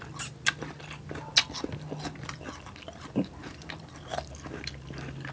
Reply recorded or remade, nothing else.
recorded